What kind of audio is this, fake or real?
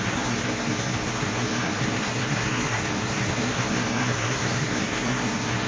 fake